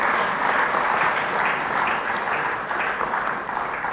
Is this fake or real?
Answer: real